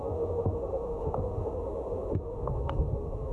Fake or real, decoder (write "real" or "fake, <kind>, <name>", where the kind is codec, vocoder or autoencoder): fake, autoencoder, DAC-VAE